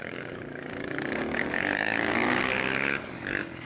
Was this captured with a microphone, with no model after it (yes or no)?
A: no